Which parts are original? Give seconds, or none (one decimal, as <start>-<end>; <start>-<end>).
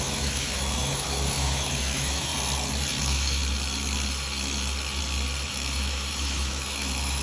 2.3-3.0; 3.4-5.5